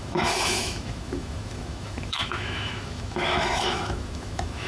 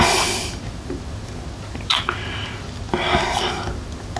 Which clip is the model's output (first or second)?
first